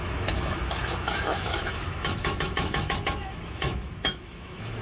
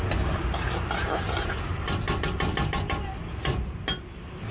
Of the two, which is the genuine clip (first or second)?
second